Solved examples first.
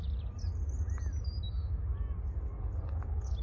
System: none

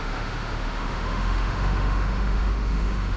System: autoencoder, DAC-VAE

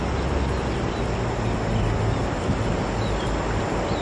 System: none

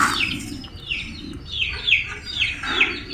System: none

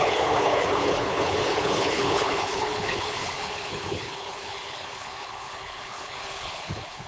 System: codec, HILCodec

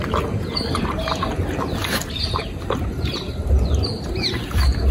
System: vocoder, BigVGAN v2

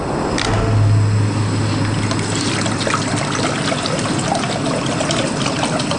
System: none